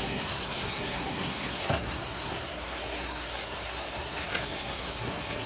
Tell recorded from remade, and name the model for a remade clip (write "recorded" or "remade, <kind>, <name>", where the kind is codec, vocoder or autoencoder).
remade, codec, SNAC